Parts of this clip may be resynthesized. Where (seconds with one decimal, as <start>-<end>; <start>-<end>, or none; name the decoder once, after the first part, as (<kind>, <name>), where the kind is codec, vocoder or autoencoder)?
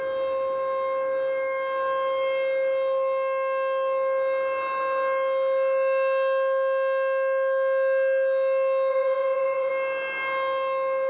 8.9-9.7 (vocoder, Vocos)